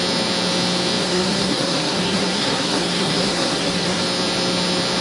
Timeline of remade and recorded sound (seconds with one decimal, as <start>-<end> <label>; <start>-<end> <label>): 0.0-1.0 recorded; 1.0-4.0 remade; 4.0-5.0 recorded